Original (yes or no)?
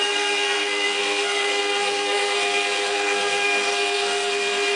no